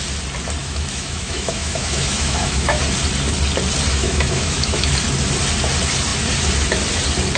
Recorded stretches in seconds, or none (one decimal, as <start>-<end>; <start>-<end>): 0.0-0.6; 2.8-4.0; 4.9-7.4